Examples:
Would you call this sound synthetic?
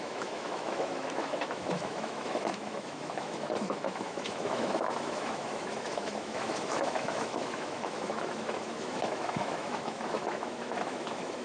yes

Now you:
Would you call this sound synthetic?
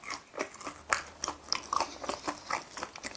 no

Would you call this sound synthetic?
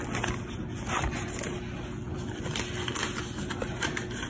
no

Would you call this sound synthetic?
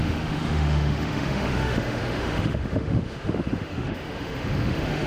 yes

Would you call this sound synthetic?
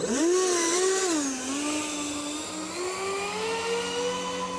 no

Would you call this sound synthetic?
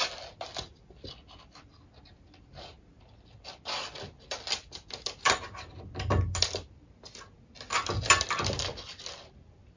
no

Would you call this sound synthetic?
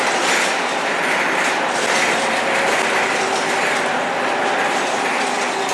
no